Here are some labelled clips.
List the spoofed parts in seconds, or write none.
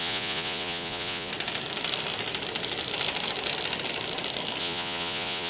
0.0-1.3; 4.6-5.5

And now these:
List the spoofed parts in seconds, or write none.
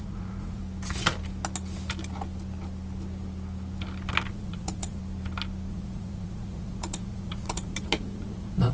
0.0-0.6; 4.3-5.0; 5.7-8.7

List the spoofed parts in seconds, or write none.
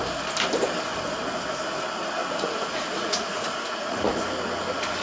2.2-4.1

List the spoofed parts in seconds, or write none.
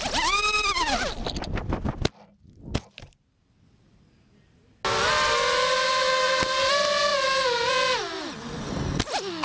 none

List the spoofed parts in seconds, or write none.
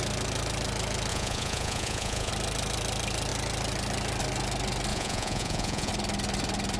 1.1-2.3; 4.9-5.9